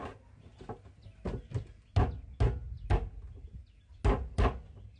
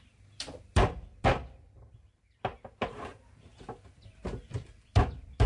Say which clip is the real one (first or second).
first